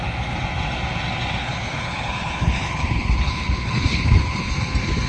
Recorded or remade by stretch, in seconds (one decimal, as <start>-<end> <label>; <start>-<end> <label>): 0.0-1.4 recorded; 1.4-4.5 remade; 4.5-5.1 recorded